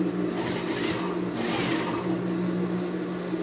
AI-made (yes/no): no